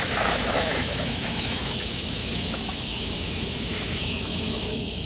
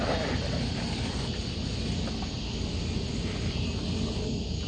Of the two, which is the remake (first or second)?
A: first